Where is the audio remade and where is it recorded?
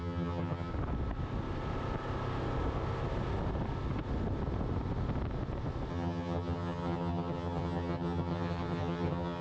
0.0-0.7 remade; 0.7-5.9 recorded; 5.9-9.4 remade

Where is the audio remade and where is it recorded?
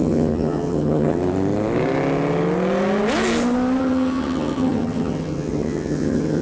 0.0-1.2 remade; 1.2-3.8 recorded; 3.8-6.4 remade